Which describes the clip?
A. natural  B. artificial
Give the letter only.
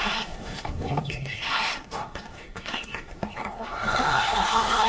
B